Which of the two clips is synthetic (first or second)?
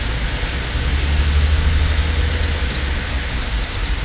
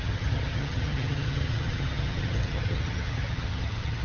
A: second